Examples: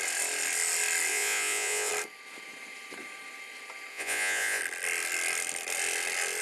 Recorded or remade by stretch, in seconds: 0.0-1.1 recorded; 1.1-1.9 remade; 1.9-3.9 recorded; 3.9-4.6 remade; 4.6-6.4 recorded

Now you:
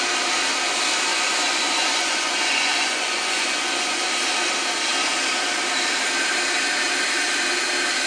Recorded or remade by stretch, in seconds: 0.0-1.1 recorded; 1.1-4.1 remade; 4.1-8.1 recorded